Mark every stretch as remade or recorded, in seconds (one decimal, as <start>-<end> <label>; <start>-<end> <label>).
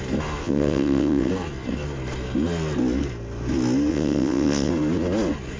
0.0-0.4 recorded; 0.4-1.3 remade; 1.3-3.9 recorded; 3.9-4.7 remade; 4.7-5.6 recorded